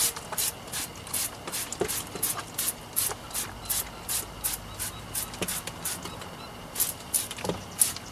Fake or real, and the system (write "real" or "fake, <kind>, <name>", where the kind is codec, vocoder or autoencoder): real